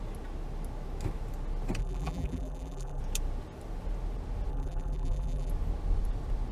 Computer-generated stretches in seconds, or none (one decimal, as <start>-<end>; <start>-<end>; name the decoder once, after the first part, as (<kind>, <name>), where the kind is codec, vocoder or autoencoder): 1.8-3.0 (vocoder, BigVGAN v2); 4.5-5.5